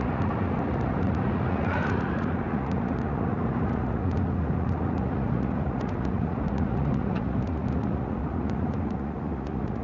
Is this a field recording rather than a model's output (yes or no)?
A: no